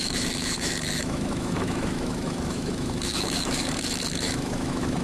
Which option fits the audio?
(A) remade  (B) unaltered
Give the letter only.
A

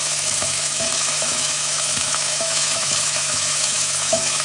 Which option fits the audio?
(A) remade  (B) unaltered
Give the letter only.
A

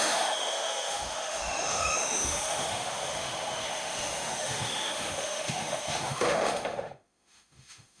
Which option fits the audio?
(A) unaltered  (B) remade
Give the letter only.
B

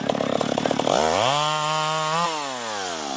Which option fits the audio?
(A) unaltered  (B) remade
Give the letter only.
A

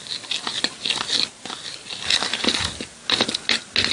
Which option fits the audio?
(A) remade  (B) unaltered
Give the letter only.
B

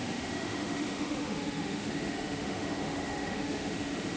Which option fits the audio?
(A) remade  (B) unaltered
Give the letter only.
A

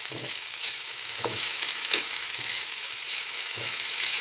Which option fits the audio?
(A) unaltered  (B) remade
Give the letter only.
B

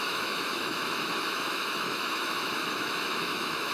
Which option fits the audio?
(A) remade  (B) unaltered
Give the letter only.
A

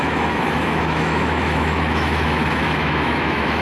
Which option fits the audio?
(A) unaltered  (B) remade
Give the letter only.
B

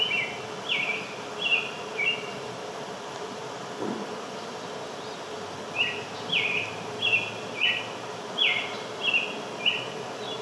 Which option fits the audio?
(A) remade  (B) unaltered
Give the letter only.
B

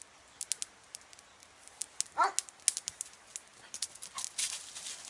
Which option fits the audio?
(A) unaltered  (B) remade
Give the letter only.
A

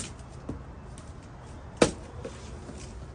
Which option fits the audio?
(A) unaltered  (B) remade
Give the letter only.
A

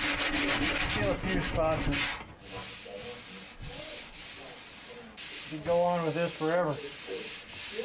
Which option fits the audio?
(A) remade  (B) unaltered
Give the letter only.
B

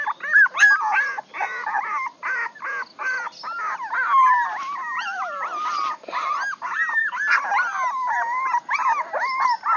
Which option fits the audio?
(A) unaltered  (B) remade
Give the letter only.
A